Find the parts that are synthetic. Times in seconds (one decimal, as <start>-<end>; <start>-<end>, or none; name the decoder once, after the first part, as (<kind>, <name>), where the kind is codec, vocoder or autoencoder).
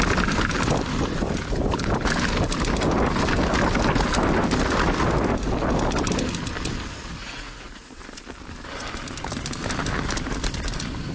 7.2-8.0 (vocoder, Vocos)